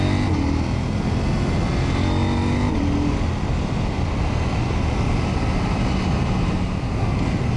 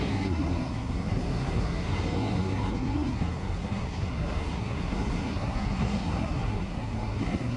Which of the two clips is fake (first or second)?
second